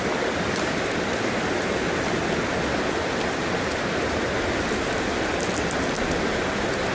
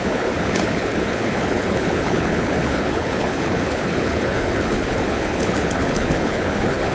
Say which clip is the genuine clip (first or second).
first